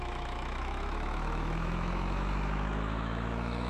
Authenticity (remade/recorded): remade